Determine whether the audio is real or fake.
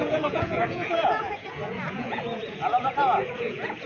fake